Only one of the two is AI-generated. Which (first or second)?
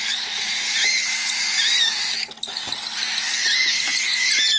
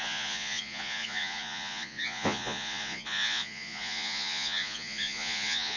second